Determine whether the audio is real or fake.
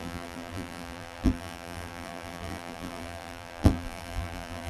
fake